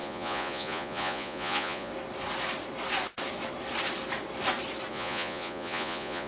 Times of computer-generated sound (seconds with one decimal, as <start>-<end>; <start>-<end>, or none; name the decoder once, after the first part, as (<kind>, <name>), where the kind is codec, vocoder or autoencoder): 0.0-1.9 (vocoder, Vocos); 4.9-6.3